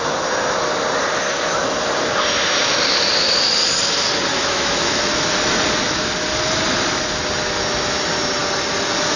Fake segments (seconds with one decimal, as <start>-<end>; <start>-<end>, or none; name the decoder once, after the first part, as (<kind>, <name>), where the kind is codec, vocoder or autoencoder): 4.3-5.0 (autoencoder, DAC-VAE)